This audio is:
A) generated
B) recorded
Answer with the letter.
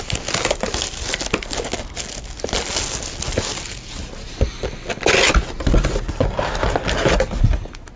B